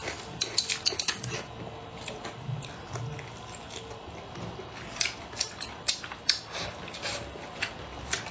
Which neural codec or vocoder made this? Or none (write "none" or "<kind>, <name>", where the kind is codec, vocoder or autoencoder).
none